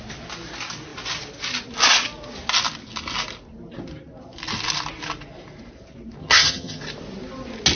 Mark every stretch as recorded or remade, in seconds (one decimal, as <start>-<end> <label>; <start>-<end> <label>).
0.0-6.2 recorded; 6.2-6.8 remade; 6.8-7.8 recorded